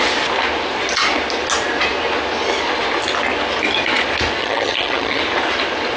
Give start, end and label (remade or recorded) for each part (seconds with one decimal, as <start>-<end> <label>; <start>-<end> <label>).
0.0-4.4 recorded; 4.4-5.2 remade; 5.2-6.0 recorded